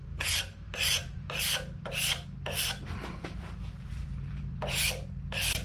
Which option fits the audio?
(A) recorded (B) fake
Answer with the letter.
B